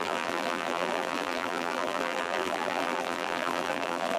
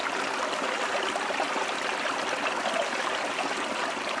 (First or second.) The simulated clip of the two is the first